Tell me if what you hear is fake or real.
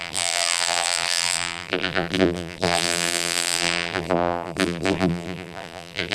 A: fake